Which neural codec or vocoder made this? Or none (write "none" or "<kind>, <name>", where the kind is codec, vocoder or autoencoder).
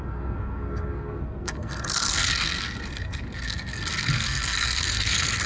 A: codec, SNAC